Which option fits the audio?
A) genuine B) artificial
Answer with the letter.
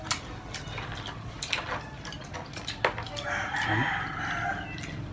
A